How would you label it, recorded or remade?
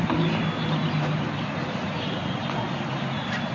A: recorded